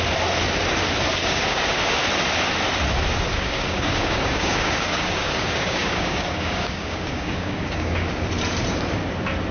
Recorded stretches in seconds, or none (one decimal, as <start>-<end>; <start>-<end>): 0.0-1.2; 1.8-3.3; 8.2-9.5

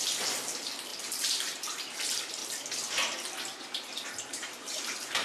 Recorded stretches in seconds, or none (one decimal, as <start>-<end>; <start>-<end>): 2.4-3.9

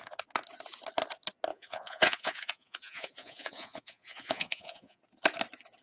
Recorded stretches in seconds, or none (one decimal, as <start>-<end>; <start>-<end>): 0.0-1.5; 5.0-5.8

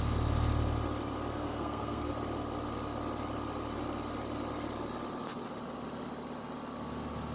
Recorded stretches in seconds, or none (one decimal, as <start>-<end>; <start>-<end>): 0.0-1.3; 2.1-7.3

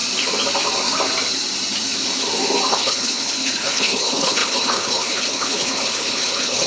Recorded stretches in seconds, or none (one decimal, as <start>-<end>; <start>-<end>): 0.0-2.7

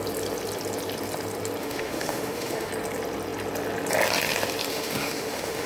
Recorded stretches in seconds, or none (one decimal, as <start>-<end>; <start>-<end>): 0.0-1.6; 2.7-4.7

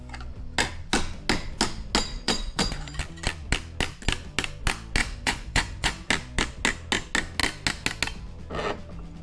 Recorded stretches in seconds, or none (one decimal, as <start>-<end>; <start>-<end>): 0.0-2.1; 3.0-5.0; 6.1-9.2